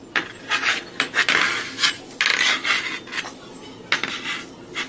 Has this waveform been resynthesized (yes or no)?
no